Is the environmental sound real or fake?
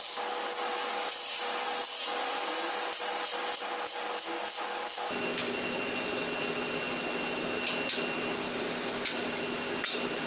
real